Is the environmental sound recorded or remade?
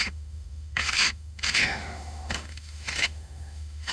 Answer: remade